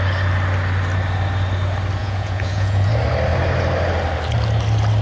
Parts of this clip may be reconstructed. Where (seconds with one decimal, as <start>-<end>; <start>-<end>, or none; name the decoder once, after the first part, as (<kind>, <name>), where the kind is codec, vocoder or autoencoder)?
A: 2.0-2.9 (vocoder, Vocos)